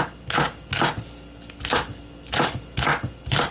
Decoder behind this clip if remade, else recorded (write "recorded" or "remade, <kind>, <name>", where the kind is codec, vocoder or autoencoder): recorded